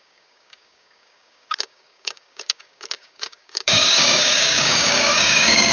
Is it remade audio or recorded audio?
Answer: remade